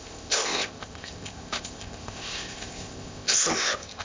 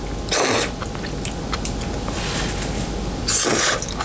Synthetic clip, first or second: first